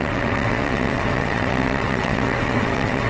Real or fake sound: fake